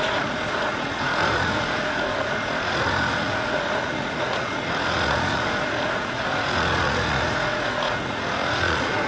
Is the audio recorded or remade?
remade